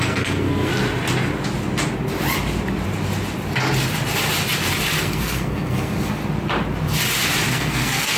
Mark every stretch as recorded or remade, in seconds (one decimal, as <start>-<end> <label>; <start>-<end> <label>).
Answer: 0.0-0.7 remade; 0.7-5.0 recorded; 5.0-6.2 remade; 6.2-7.5 recorded; 7.5-8.2 remade